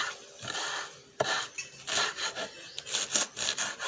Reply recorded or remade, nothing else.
recorded